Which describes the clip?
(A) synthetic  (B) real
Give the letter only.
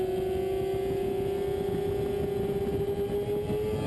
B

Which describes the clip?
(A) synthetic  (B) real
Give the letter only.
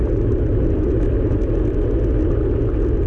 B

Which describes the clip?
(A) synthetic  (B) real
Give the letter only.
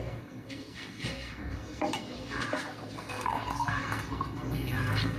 A